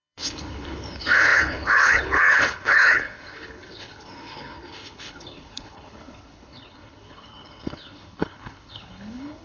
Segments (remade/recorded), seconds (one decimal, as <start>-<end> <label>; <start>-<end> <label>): 0.0-9.4 remade